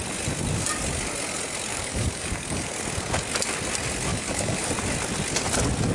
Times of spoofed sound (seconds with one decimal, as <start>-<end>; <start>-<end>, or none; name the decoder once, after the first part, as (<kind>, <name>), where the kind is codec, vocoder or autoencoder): 1.7-2.7 (codec, DAC); 4.1-4.7